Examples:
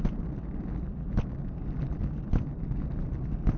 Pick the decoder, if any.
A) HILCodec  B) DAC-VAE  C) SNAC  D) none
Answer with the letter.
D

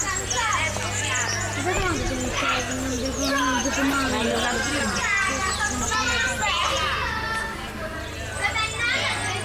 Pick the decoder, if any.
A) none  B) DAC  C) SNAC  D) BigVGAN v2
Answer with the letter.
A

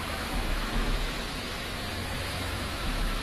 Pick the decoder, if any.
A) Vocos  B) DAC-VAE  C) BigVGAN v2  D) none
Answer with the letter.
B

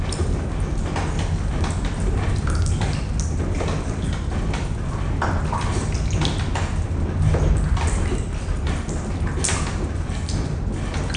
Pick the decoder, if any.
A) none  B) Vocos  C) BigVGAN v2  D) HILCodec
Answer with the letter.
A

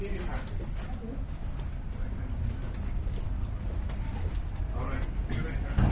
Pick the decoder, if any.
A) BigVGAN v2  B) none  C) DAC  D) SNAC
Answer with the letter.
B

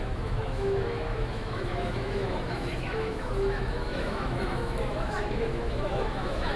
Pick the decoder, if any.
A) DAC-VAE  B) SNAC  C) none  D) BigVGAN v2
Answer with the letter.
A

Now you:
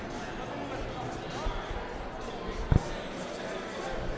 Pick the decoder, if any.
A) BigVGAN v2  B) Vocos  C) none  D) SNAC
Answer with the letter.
C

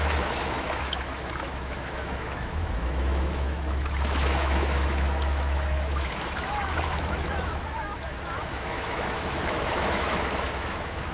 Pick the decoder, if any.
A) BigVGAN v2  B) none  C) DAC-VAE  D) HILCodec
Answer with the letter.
C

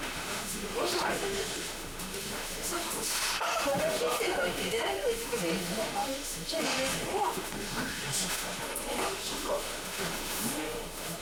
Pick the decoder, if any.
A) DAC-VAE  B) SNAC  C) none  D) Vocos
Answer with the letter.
A